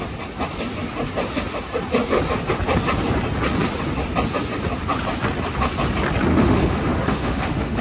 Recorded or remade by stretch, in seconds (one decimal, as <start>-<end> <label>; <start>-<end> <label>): 0.0-6.3 recorded; 6.3-7.8 remade